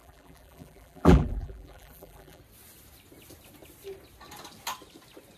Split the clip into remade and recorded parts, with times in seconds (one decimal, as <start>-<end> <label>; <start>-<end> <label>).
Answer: 0.0-2.4 remade; 2.4-5.4 recorded